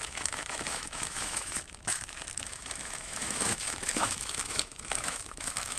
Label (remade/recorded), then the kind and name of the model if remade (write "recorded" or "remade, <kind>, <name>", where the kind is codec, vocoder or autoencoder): remade, autoencoder, DAC-VAE